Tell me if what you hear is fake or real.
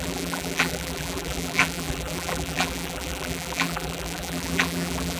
fake